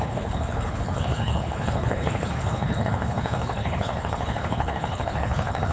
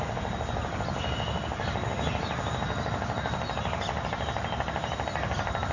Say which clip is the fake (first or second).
first